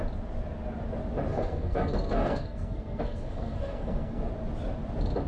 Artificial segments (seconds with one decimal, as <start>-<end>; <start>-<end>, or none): 1.3-4.3